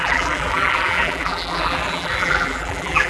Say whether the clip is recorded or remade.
remade